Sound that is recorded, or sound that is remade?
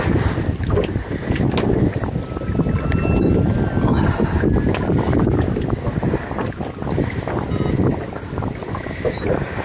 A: recorded